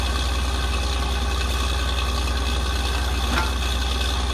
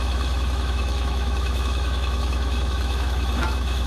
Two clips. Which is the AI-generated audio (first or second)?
second